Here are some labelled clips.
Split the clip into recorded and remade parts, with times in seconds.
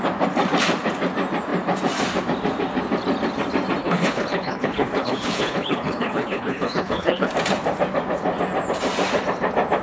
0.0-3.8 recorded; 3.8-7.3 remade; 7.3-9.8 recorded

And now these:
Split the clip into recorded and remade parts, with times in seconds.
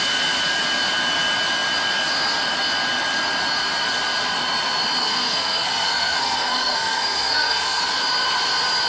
0.0-5.0 recorded; 5.0-7.8 remade; 7.8-8.9 recorded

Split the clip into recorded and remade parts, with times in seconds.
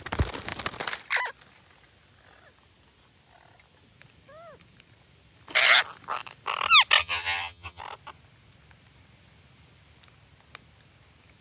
0.0-7.0 recorded; 7.0-7.8 remade; 7.8-11.4 recorded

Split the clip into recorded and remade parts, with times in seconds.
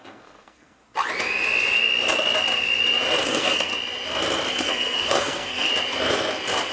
0.0-0.8 remade; 0.8-3.2 recorded; 3.2-3.7 remade; 3.7-4.5 recorded; 4.5-5.7 remade; 5.7-6.7 recorded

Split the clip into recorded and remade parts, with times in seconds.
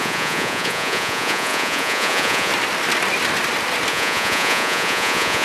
0.0-2.5 remade; 2.5-3.9 recorded; 3.9-5.4 remade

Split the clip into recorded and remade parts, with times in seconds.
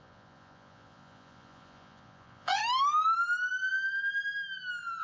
0.0-2.6 remade; 2.6-5.0 recorded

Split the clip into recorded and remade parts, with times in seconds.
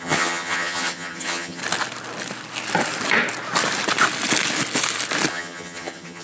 0.0-1.6 remade; 1.6-5.3 recorded; 5.3-6.2 remade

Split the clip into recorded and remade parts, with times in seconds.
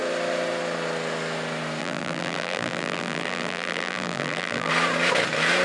0.0-1.8 recorded; 1.8-4.7 remade; 4.7-5.6 recorded